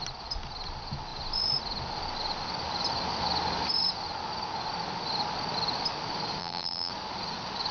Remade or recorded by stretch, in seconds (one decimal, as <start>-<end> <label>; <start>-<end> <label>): 0.0-6.4 recorded; 6.4-6.9 remade; 6.9-7.7 recorded